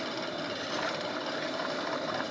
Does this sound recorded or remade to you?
recorded